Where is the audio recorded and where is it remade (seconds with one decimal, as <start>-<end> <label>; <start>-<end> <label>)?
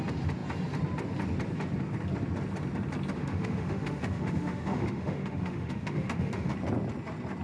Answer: 0.0-3.2 recorded; 3.2-6.5 remade; 6.5-7.4 recorded